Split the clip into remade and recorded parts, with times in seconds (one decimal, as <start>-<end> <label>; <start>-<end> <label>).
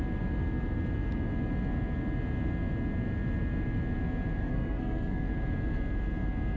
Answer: 0.0-4.4 recorded; 4.4-5.3 remade; 5.3-6.6 recorded